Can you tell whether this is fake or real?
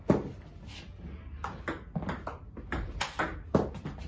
real